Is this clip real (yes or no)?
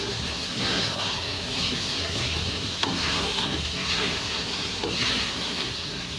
no